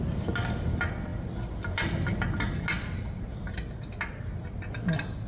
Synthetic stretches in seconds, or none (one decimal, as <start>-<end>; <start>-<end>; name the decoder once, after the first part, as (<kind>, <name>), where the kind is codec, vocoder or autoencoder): none